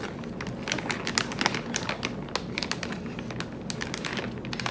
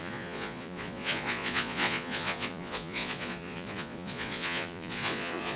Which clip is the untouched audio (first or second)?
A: first